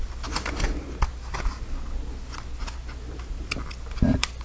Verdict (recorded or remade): recorded